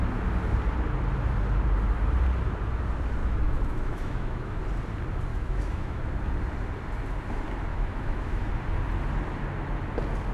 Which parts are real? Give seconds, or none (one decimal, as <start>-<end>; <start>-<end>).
0.0-3.2; 4.6-5.3; 6.0-7.7; 8.5-10.3